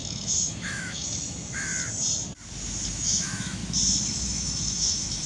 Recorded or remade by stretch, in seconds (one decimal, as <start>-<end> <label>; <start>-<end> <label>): 0.0-1.7 remade; 1.7-2.9 recorded; 2.9-3.6 remade; 3.6-4.1 recorded; 4.1-5.3 remade